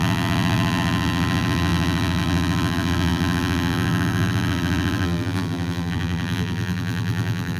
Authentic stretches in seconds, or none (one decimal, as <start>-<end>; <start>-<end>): none